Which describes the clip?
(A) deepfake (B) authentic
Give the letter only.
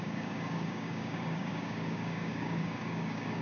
A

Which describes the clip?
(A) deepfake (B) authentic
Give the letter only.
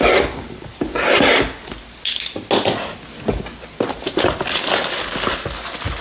B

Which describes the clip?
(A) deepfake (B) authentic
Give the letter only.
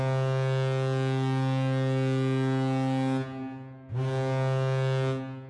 B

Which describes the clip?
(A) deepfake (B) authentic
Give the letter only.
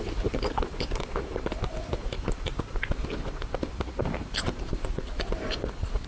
B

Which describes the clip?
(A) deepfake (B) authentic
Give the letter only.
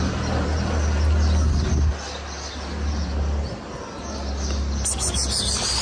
B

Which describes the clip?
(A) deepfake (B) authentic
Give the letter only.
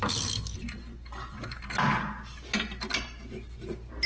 B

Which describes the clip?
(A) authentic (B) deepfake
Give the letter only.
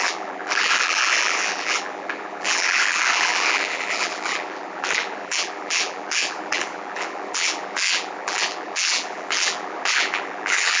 B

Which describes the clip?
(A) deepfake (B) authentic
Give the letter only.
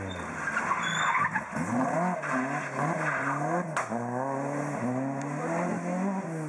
B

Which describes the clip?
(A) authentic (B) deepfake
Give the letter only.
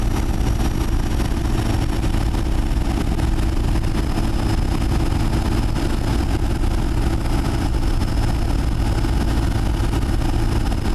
A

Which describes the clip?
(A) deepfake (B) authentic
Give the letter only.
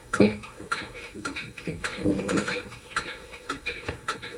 A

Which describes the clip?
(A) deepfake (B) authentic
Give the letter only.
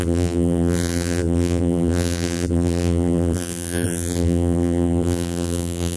A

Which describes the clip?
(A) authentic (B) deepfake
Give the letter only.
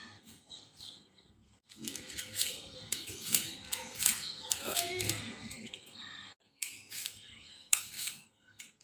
B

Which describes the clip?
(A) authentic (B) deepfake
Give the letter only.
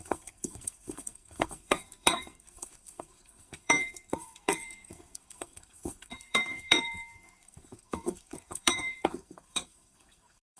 B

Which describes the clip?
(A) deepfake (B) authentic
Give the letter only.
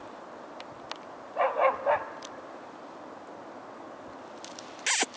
B